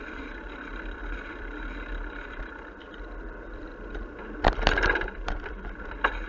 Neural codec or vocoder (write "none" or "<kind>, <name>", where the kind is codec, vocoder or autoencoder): vocoder, BigVGAN v2